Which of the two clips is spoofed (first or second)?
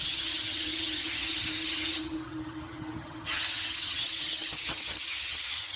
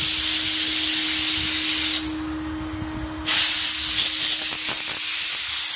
first